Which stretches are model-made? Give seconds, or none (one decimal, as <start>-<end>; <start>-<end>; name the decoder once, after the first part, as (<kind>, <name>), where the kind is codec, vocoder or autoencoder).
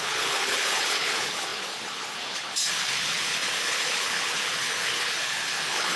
0.0-6.0 (codec, HILCodec)